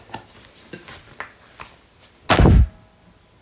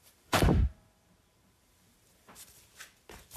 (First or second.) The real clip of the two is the first